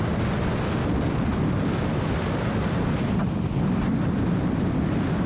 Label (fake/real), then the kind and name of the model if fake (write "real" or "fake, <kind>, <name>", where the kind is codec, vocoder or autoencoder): real